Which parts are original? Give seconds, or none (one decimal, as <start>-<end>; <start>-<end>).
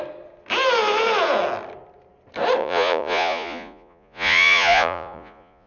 0.0-2.6